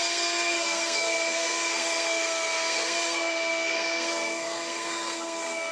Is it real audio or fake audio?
fake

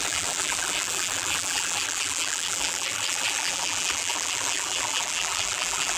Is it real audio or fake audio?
fake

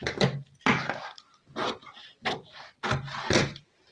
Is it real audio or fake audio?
real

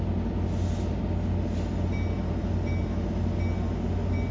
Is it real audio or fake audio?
real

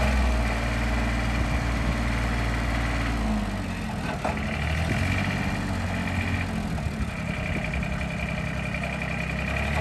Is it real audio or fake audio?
real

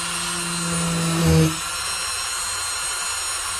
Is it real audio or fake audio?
real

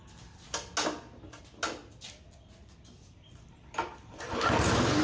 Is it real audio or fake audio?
real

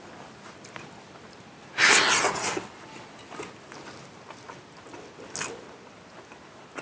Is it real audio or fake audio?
real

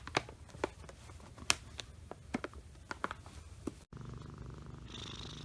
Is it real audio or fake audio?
real